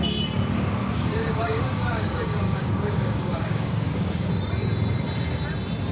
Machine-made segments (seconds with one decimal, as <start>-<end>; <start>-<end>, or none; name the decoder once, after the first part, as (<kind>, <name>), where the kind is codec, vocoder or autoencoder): 0.8-4.3 (codec, DAC)